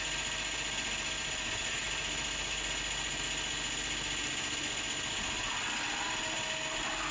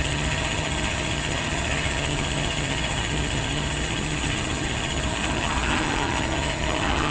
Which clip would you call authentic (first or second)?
first